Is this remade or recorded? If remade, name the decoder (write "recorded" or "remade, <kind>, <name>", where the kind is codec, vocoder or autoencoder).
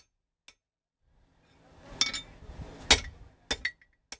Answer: recorded